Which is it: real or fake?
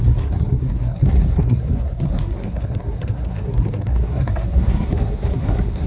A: fake